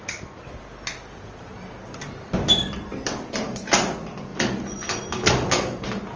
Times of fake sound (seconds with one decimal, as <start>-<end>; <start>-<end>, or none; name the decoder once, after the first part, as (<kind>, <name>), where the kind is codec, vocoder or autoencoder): none